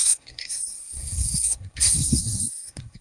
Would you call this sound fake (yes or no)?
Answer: yes